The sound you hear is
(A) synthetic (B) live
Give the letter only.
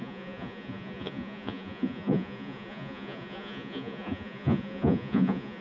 A